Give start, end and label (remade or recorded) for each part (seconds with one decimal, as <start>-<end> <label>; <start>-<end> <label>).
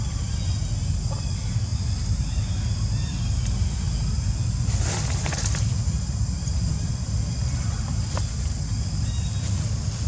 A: 0.0-10.1 recorded